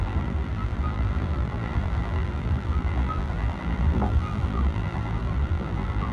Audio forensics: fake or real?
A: fake